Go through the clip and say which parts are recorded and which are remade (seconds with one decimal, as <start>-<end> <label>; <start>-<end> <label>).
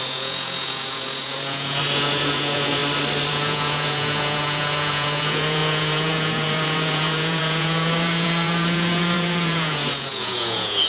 0.0-2.8 remade; 2.8-3.3 recorded; 3.3-10.9 remade